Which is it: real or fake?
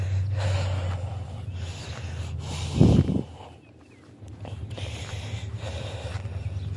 real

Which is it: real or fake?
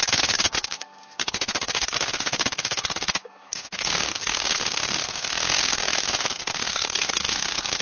fake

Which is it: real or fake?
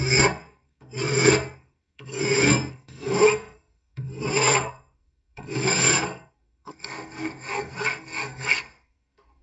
fake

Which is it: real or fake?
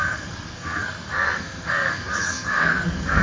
fake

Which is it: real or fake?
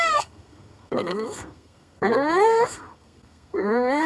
fake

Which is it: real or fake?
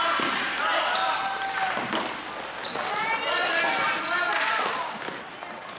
real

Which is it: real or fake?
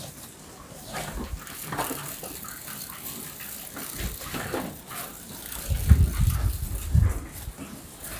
real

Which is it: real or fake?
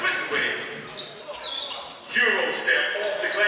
real